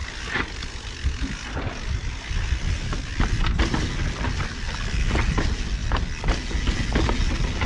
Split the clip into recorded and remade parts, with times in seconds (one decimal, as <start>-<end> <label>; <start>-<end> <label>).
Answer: 0.0-7.7 recorded